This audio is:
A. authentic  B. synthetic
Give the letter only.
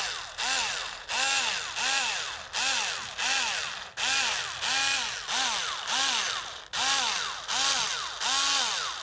A